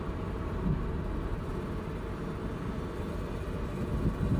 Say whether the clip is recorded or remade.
recorded